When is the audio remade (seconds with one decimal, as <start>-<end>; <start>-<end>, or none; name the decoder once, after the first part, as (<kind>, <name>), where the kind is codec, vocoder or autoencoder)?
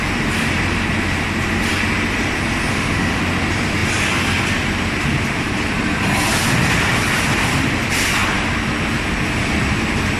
2.7-3.2 (autoencoder, DAC-VAE)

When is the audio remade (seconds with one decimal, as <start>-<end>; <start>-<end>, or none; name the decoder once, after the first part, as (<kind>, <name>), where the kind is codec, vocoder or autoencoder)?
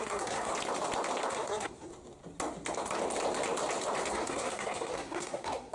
0.0-0.5 (codec, SNAC); 1.3-1.9; 4.1-5.7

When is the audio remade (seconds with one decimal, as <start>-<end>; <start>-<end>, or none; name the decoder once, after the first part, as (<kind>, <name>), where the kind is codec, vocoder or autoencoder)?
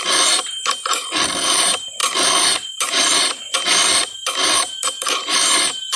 none